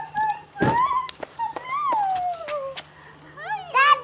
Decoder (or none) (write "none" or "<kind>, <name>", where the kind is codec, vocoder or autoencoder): none